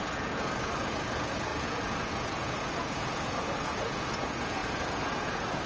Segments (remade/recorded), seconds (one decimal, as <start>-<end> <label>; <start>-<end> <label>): 0.0-5.7 remade